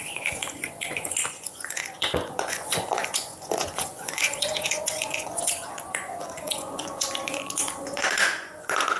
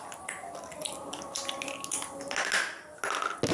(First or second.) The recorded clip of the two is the second